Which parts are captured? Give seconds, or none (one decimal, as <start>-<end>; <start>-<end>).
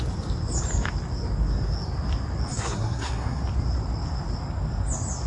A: 0.0-2.5; 3.4-5.3